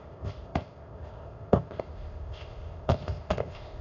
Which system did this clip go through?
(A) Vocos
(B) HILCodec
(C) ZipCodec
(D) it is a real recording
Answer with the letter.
C